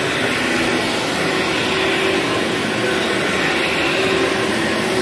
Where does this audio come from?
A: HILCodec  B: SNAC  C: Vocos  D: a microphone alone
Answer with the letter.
D